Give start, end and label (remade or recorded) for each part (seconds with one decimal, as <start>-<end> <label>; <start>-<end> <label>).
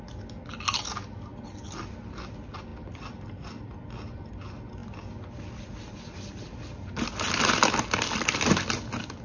0.0-2.7 recorded; 2.7-4.3 remade; 4.3-9.2 recorded